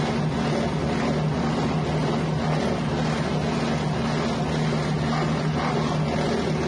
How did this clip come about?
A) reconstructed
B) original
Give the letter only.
B